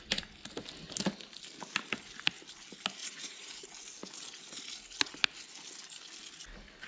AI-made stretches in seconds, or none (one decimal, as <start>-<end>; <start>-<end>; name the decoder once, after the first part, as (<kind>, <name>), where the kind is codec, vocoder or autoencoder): 3.0-3.6 (vocoder, Vocos)